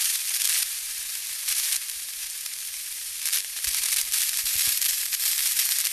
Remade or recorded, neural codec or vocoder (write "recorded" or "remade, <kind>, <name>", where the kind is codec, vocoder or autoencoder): remade, vocoder, BigVGAN v2